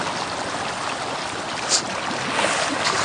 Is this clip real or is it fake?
real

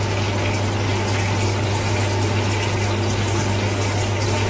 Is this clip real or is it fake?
real